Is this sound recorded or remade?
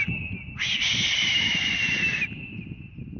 recorded